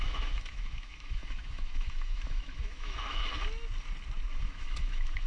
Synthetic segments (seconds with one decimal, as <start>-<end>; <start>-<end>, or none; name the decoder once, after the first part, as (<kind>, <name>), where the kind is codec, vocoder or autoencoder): 0.0-3.2 (autoencoder, DAC-VAE); 4.4-5.3

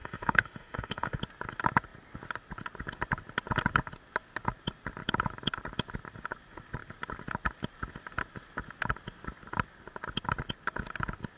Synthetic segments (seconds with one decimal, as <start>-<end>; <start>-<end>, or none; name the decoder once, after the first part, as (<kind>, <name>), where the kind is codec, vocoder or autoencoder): 0.0-1.2 (autoencoder, DAC-VAE)

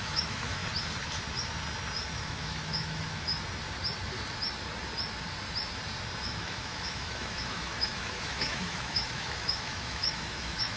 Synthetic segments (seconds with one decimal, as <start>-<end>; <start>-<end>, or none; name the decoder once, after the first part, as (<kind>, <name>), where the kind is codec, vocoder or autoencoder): 0.0-0.6 (autoencoder, DAC-VAE); 2.1-3.3; 6.2-10.8

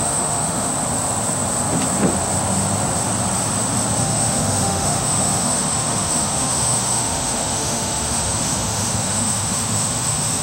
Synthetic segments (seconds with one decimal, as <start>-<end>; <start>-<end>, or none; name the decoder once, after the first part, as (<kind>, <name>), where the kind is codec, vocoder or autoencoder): 0.0-0.7 (autoencoder, DAC-VAE); 4.0-10.4

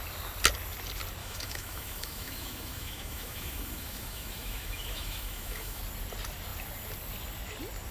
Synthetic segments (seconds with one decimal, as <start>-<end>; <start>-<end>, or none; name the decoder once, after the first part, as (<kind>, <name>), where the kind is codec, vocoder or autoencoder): 1.2-5.8 (autoencoder, DAC-VAE)